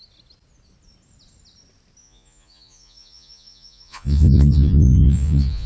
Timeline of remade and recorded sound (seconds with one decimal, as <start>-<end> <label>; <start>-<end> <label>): 0.0-2.0 recorded; 2.0-5.7 remade

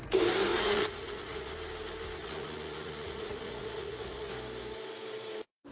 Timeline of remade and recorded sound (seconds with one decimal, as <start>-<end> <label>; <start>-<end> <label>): 0.0-0.5 recorded; 0.5-1.5 remade; 1.5-2.2 recorded; 2.2-4.3 remade; 4.3-5.7 recorded

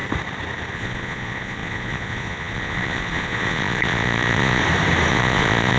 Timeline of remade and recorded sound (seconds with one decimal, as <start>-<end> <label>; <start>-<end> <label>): 0.0-0.7 recorded; 0.7-4.6 remade; 4.6-5.1 recorded; 5.1-5.8 remade

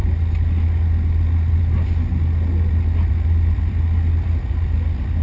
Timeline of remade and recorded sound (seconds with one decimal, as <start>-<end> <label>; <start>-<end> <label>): 0.0-5.2 recorded

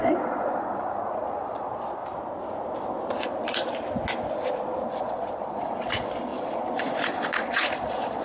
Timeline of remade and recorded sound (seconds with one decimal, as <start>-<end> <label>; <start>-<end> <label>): 0.0-2.0 remade; 2.0-5.0 recorded; 5.0-8.2 remade

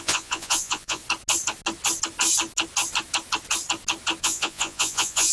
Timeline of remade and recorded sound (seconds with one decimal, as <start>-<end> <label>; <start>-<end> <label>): 0.0-1.0 remade; 1.0-4.2 recorded; 4.2-5.3 remade

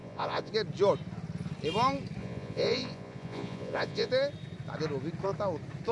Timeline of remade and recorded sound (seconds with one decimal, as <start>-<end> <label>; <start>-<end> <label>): 0.0-0.5 remade; 0.5-2.2 recorded; 2.2-4.1 remade; 4.1-5.9 recorded